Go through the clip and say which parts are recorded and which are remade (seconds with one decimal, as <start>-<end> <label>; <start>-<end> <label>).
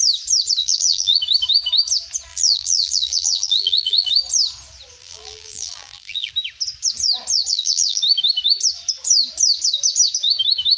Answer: 0.0-0.6 recorded; 0.6-1.2 remade; 1.2-2.3 recorded; 2.3-4.1 remade; 4.1-5.0 recorded; 5.0-6.3 remade; 6.3-7.5 recorded; 7.5-8.0 remade; 8.0-10.8 recorded